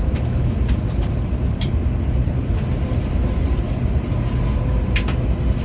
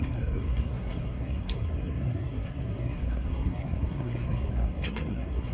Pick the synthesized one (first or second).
second